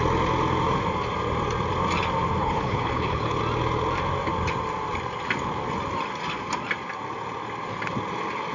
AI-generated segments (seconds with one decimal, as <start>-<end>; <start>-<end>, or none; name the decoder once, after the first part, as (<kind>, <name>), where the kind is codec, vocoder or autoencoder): 2.4-3.4 (codec, HILCodec)